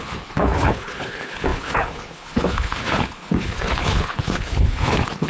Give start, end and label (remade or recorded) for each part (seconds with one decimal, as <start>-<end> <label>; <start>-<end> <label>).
0.0-5.3 remade